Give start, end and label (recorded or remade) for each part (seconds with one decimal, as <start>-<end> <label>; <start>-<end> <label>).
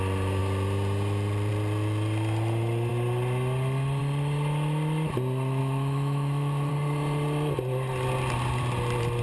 0.0-5.6 recorded; 5.6-6.7 remade; 6.7-9.2 recorded